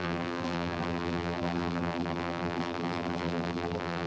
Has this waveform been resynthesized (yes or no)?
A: yes